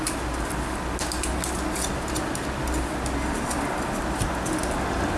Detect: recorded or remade recorded